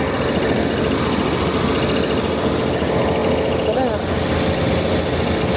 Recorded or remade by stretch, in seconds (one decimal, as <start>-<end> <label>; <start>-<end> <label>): 0.0-5.6 recorded